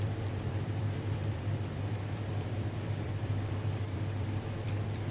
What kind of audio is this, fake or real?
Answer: fake